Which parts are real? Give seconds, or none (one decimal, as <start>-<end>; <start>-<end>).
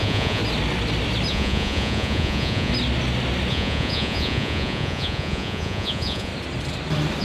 0.4-1.3; 2.7-3.5; 6.3-7.2